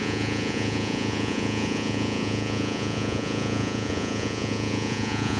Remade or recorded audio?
remade